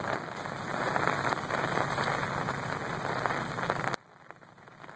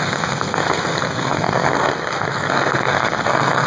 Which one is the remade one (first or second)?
second